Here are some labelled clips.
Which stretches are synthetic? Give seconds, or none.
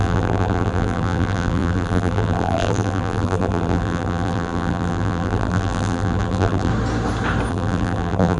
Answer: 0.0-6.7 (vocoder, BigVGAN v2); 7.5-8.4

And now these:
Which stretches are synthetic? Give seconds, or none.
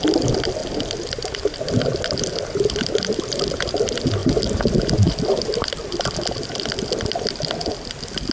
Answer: 0.6-3.6 (vocoder, BigVGAN v2); 4.2-6.8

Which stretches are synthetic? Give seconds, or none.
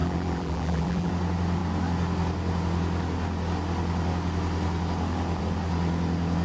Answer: 0.0-1.1 (vocoder, BigVGAN v2)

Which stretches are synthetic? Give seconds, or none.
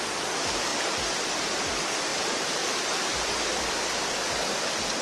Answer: none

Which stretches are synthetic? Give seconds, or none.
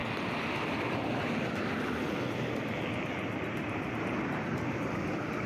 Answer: none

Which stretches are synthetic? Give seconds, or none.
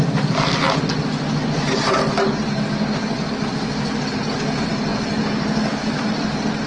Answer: none